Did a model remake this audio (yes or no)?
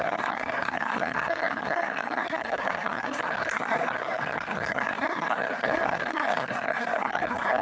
yes